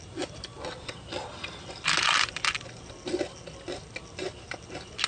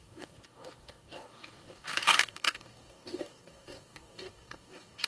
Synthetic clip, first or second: second